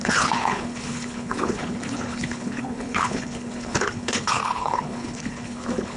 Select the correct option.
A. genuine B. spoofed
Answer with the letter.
B